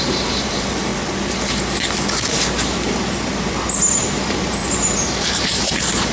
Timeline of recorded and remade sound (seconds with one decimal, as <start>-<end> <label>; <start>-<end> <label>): 0.0-0.9 remade; 0.9-3.9 recorded; 3.9-6.1 remade